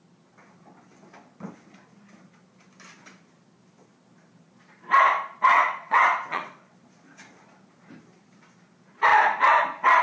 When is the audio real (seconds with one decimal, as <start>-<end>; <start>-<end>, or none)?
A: 0.0-5.5; 6.7-10.0